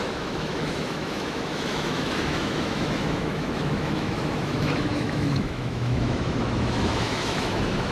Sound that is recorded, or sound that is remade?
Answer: remade